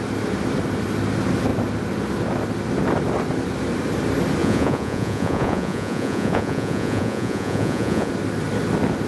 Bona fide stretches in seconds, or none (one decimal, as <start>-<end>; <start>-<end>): 0.0-4.4; 8.1-9.1